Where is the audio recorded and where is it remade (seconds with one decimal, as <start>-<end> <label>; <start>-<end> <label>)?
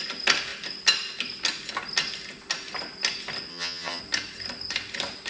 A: 0.0-3.5 recorded; 3.5-4.0 remade; 4.0-5.3 recorded